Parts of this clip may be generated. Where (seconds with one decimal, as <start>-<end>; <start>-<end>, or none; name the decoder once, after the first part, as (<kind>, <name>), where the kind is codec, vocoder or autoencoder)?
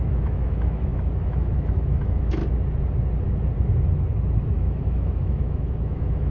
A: 0.0-2.4 (autoencoder, DAC-VAE); 4.5-6.3